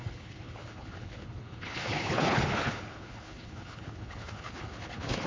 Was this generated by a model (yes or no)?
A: yes